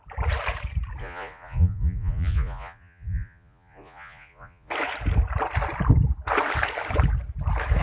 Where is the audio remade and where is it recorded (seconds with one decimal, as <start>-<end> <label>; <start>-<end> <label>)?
0.0-1.0 recorded; 1.0-4.7 remade; 4.7-7.8 recorded